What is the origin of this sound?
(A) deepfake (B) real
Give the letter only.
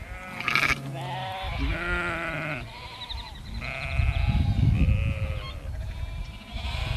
B